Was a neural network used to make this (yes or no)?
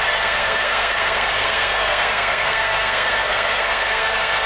yes